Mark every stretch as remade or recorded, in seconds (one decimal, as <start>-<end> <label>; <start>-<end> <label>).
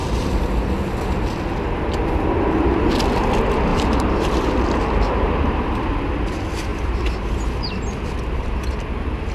0.0-0.5 remade; 0.5-3.7 recorded; 3.7-4.5 remade; 4.5-6.7 recorded; 6.7-8.5 remade; 8.5-9.3 recorded